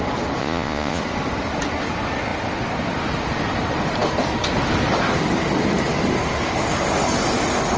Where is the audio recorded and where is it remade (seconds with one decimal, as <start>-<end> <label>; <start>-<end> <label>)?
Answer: 0.0-0.4 recorded; 0.4-1.0 remade; 1.0-7.8 recorded